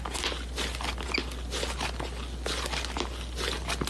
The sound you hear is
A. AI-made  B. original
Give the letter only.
B